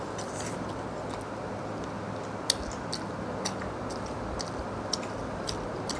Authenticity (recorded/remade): recorded